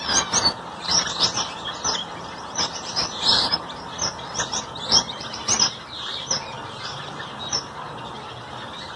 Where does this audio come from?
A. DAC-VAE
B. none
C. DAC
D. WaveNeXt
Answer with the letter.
B